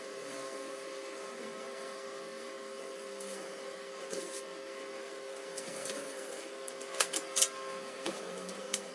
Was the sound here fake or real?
fake